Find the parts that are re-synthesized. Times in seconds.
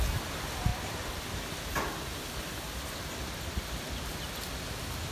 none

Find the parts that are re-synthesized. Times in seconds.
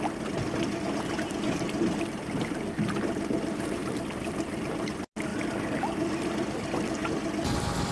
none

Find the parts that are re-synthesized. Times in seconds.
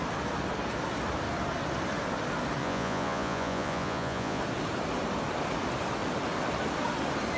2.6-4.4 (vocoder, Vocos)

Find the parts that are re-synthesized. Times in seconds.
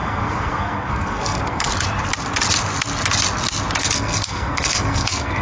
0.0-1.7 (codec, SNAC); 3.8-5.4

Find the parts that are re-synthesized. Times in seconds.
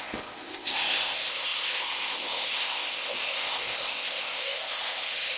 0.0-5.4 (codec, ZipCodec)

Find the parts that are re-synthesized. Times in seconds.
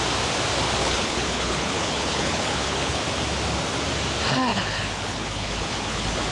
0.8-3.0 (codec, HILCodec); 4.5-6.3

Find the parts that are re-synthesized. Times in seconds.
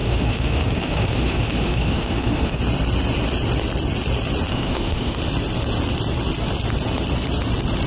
0.0-2.6 (autoencoder, DAC-VAE); 4.5-5.2